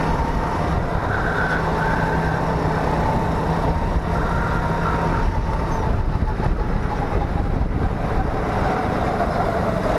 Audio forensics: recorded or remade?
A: recorded